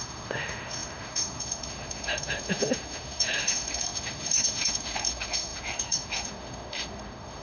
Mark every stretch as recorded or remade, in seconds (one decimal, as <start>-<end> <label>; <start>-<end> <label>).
0.0-7.4 remade